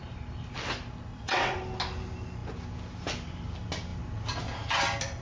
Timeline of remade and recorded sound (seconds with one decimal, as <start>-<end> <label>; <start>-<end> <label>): 0.0-1.1 recorded; 1.1-1.6 remade; 1.6-5.2 recorded